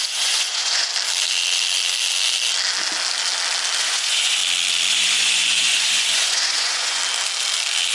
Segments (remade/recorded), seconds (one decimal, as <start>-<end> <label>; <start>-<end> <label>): 0.0-0.9 remade; 0.9-3.8 recorded; 3.8-4.4 remade; 4.4-4.9 recorded; 4.9-7.0 remade; 7.0-7.9 recorded